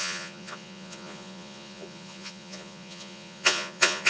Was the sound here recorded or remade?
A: remade